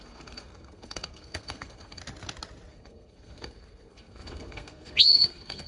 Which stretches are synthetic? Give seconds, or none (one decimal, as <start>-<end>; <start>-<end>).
0.0-2.0; 2.7-5.7